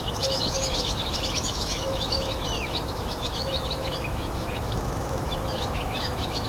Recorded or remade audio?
remade